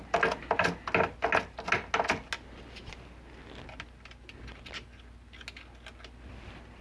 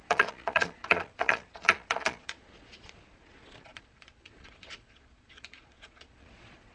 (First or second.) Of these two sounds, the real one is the first